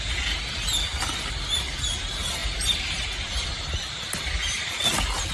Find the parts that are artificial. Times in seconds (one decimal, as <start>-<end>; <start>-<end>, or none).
2.4-4.0